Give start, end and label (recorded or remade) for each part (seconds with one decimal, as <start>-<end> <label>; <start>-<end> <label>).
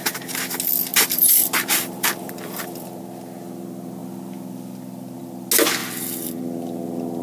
0.0-0.9 recorded; 0.9-3.0 remade; 3.0-5.8 recorded; 5.8-6.4 remade; 6.4-7.2 recorded